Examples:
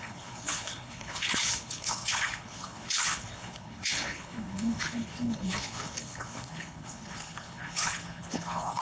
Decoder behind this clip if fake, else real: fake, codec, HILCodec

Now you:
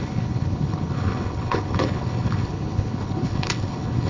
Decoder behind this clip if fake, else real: fake, codec, HILCodec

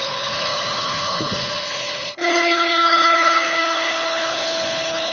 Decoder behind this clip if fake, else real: fake, codec, HILCodec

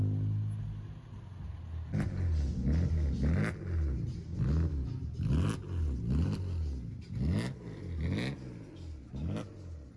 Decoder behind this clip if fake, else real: real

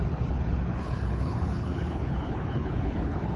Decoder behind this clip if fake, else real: fake, codec, HILCodec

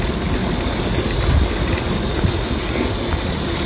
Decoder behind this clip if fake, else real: real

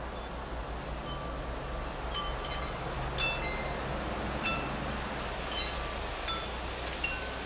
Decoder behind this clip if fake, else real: real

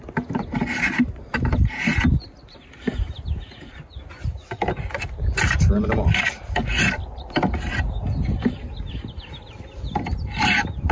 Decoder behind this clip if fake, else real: real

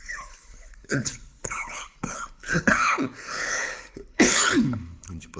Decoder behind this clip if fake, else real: fake, codec, HILCodec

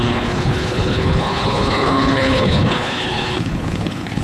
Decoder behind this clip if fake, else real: fake, codec, HILCodec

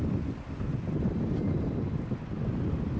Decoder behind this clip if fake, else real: real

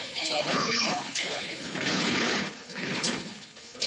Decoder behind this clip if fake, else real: fake, codec, HILCodec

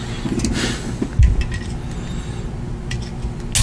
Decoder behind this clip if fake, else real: real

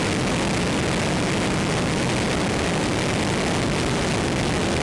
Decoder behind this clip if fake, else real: real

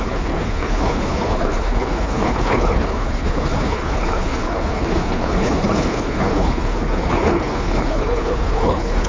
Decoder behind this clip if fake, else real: fake, codec, HILCodec